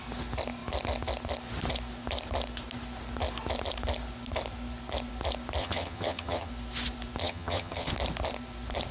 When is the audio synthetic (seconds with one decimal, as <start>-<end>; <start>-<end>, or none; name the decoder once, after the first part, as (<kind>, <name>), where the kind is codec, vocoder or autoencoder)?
5.6-6.5 (vocoder, HiFi-GAN); 7.2-7.9